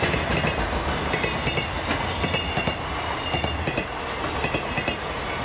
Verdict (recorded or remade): recorded